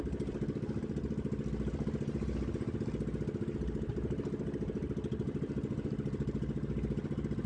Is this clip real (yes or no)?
yes